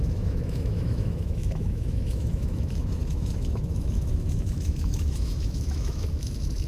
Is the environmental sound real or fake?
fake